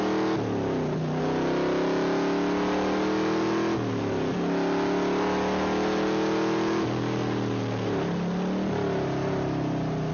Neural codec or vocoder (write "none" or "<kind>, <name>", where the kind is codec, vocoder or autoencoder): none